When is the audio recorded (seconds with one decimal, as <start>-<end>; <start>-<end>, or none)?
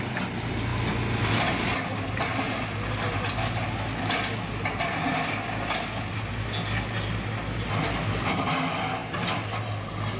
0.0-10.2